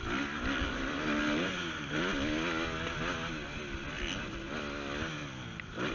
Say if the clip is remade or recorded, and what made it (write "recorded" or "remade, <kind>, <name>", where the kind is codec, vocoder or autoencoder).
recorded